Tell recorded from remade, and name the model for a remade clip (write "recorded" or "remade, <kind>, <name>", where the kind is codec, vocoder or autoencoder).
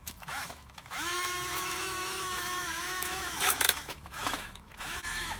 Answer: remade, autoencoder, DAC-VAE